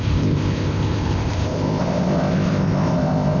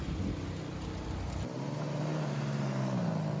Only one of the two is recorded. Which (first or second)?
second